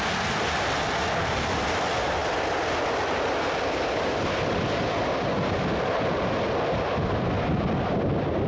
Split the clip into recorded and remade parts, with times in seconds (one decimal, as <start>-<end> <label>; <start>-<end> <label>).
0.0-8.5 recorded